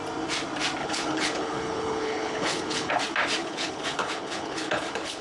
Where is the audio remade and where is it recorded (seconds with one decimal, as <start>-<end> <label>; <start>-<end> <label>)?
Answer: 0.0-0.8 recorded; 0.8-2.9 remade; 2.9-3.4 recorded; 3.4-5.2 remade